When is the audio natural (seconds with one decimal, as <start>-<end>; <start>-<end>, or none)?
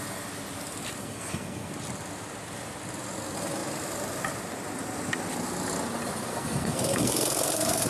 0.0-1.0; 1.7-6.3